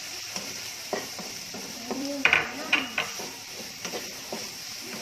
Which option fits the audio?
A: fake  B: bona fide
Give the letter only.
A